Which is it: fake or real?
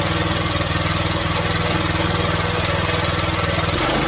real